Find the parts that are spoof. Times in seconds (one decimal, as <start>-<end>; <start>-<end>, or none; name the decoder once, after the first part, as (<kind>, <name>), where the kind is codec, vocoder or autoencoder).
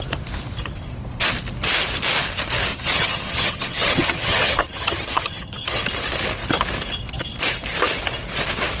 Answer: 2.7-5.8 (vocoder, HiFi-GAN)